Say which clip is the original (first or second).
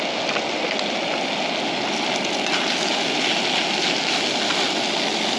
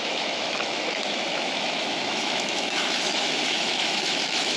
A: first